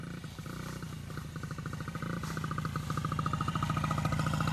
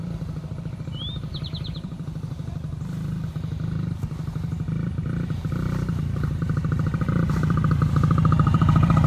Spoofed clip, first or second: second